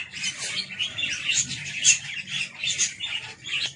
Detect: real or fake real